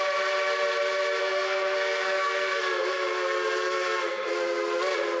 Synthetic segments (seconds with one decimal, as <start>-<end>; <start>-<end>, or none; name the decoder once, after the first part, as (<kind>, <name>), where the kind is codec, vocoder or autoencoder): 1.2-4.3 (codec, SNAC)